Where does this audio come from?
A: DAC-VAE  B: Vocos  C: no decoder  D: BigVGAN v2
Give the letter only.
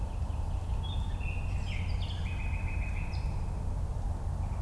C